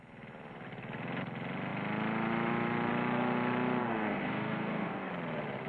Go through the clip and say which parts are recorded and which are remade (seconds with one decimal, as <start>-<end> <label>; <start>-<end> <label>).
0.0-3.8 recorded; 3.8-5.1 remade; 5.1-5.7 recorded